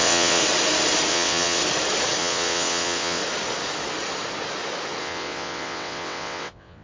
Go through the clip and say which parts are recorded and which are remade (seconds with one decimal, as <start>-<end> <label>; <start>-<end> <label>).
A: 0.0-0.4 remade; 0.4-1.1 recorded; 1.1-1.6 remade; 1.6-2.2 recorded; 2.2-3.2 remade; 3.2-5.0 recorded; 5.0-6.8 remade